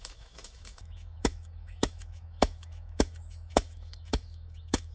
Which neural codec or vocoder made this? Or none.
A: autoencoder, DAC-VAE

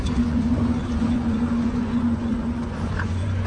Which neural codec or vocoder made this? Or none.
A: vocoder, Vocos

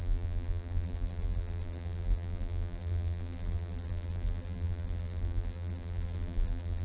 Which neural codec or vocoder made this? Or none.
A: vocoder, BigVGAN v2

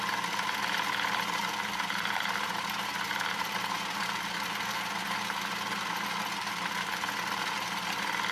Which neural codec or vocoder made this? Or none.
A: none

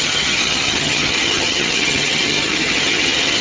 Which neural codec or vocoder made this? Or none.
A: vocoder, HiFi-GAN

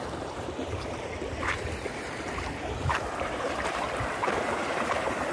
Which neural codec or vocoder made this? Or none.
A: vocoder, BigVGAN v2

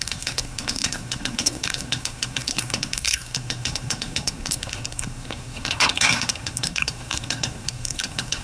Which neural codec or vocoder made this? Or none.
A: codec, SNAC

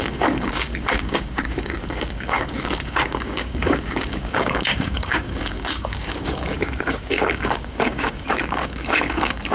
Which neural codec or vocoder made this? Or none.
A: codec, DAC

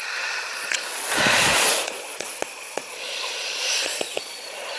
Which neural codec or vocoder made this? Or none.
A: vocoder, Vocos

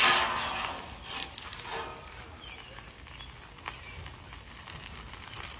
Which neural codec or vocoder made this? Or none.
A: none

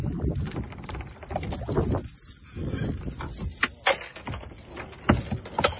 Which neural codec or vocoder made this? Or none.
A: none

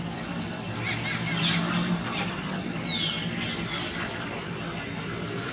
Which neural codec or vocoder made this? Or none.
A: none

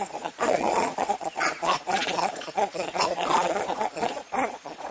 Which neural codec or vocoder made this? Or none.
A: vocoder, Vocos